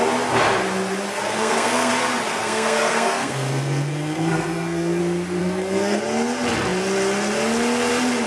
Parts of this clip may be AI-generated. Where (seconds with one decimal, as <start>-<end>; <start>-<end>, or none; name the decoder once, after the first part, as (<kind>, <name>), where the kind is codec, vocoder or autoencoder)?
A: 1.1-1.9 (codec, SNAC); 2.3-5.0; 5.4-6.0